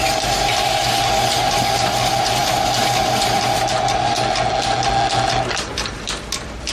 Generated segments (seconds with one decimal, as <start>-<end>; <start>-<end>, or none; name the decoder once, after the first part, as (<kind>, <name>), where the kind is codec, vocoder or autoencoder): none